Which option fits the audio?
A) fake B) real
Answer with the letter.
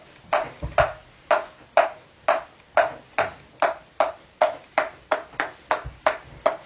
B